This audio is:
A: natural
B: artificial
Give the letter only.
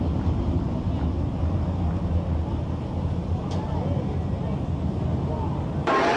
A